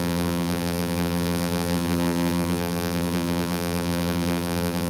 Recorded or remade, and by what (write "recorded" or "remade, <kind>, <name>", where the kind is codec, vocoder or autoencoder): remade, vocoder, BigVGAN v2